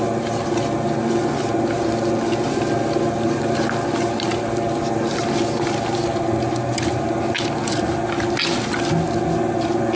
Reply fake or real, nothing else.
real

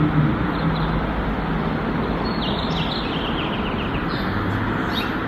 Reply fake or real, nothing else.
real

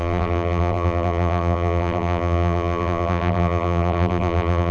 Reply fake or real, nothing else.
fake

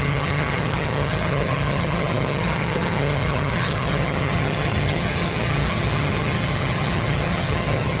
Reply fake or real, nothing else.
fake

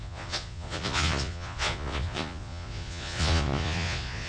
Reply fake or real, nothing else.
fake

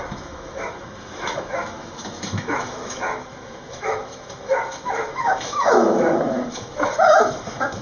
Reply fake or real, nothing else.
fake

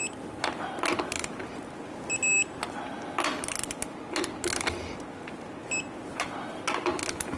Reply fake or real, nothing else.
real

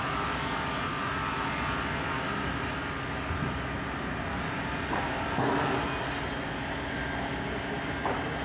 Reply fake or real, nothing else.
real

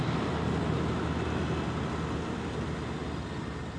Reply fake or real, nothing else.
real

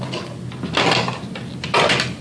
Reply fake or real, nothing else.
real